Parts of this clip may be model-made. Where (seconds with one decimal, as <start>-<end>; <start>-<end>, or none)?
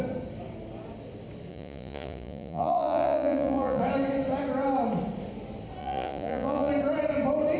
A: 1.5-3.8; 5.8-6.7